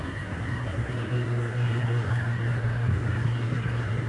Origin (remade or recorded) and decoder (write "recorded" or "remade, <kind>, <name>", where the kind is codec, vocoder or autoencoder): remade, codec, SNAC